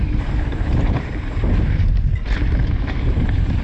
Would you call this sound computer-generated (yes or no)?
yes